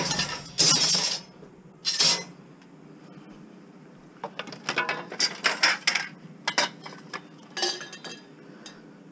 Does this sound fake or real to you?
real